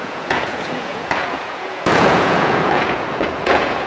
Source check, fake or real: fake